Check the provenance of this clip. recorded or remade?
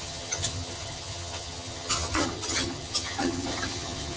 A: remade